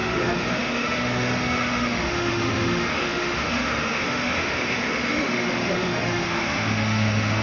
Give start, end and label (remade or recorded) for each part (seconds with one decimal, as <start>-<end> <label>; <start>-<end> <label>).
0.0-7.4 remade